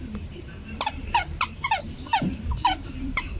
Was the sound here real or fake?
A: fake